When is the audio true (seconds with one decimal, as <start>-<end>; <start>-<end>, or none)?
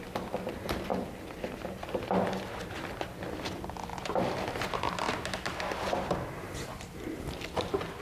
0.0-8.0